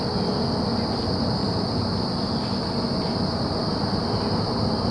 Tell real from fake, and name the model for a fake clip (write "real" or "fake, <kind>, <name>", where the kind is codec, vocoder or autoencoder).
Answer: real